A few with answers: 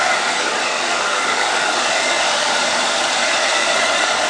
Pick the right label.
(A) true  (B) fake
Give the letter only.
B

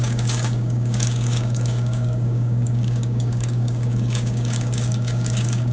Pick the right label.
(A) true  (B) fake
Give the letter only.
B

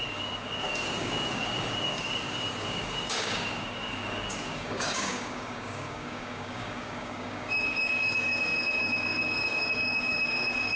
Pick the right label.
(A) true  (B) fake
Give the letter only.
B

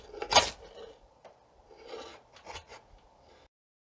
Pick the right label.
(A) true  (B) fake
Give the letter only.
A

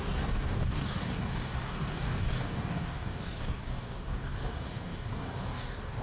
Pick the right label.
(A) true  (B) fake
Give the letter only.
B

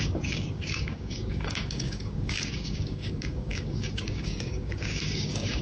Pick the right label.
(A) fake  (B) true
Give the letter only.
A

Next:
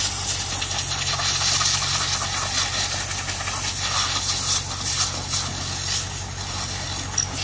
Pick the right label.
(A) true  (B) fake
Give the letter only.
A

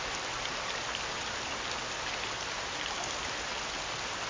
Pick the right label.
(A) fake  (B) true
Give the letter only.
B